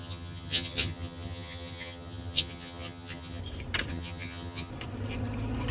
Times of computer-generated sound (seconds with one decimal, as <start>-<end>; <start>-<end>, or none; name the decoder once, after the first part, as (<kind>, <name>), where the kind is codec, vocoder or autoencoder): 0.0-3.4 (vocoder, HiFi-GAN); 3.9-4.7

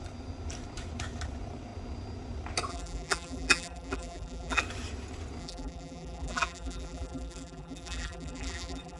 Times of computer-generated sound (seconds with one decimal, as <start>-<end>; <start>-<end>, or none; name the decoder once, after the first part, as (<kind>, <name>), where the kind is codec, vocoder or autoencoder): 2.7-4.6 (vocoder, BigVGAN v2); 5.4-9.0

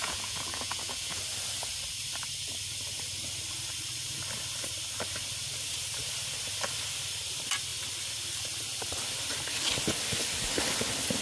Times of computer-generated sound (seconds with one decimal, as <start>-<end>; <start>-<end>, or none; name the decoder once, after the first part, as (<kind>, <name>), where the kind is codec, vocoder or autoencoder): 0.0-1.2 (vocoder, Vocos)